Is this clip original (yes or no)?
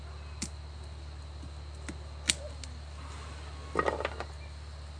yes